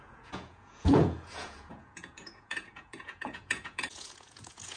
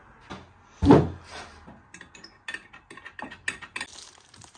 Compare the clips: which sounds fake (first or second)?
first